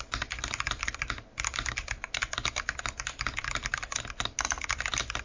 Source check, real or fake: real